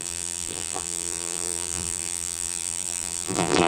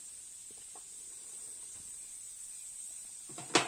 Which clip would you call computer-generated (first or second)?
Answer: first